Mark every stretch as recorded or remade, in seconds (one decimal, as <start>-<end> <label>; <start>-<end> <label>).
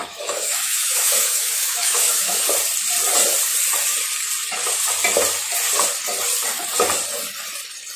0.0-2.4 remade; 2.4-8.0 recorded